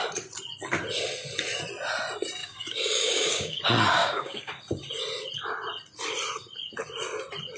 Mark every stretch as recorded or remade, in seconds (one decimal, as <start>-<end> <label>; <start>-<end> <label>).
0.0-2.4 recorded; 2.4-3.6 remade; 3.6-4.0 recorded; 4.0-4.5 remade; 4.5-7.6 recorded